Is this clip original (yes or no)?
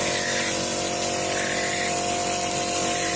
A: yes